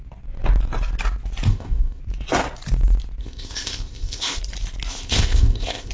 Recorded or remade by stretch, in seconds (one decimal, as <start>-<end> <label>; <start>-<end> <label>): 0.0-1.5 recorded; 1.5-2.0 remade; 2.0-3.2 recorded; 3.2-4.4 remade; 4.4-4.9 recorded; 4.9-5.9 remade